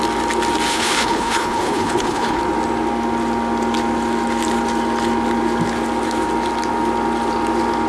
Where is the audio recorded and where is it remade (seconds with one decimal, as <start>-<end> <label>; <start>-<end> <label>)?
0.0-0.7 recorded; 0.7-2.4 remade; 2.4-7.9 recorded